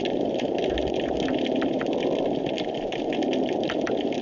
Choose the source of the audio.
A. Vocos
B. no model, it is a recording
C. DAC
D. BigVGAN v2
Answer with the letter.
B